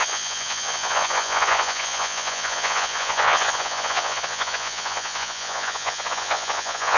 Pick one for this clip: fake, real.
fake